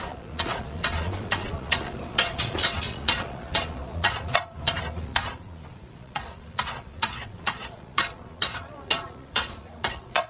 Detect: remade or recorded remade